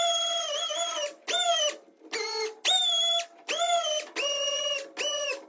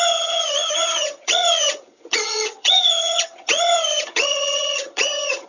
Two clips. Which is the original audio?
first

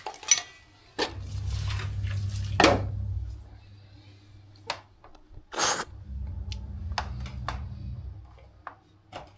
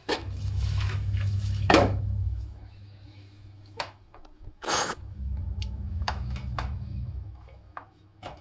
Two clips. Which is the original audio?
first